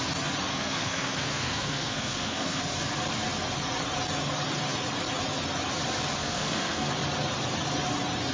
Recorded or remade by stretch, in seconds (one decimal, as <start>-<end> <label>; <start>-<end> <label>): 0.0-0.5 recorded; 0.5-2.6 remade; 2.6-6.2 recorded; 6.2-6.9 remade; 6.9-8.3 recorded